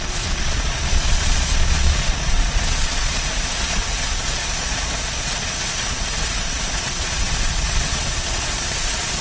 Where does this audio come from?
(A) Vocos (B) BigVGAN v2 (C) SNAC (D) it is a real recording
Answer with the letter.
A